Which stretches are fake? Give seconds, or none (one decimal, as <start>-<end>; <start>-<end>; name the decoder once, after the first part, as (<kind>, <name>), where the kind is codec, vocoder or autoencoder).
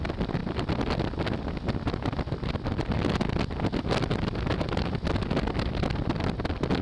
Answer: none